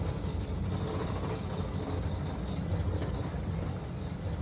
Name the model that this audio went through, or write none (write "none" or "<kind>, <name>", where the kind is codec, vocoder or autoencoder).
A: none